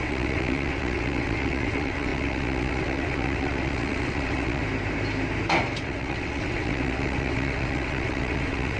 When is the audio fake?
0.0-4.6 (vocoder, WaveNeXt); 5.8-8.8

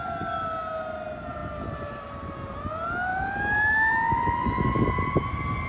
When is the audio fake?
1.4-2.0 (vocoder, BigVGAN v2)

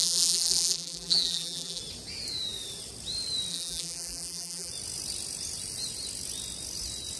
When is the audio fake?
0.0-1.8 (vocoder, BigVGAN v2); 3.5-4.7

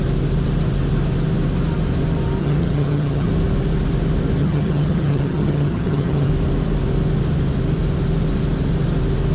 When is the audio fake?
2.4-3.3 (vocoder, HiFi-GAN); 4.4-6.3